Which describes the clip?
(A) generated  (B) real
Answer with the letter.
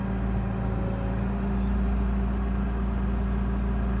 B